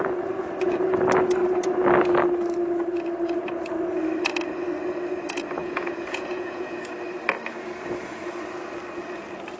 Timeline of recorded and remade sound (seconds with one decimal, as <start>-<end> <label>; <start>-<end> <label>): 0.0-5.6 recorded; 5.6-6.8 remade; 6.8-9.6 recorded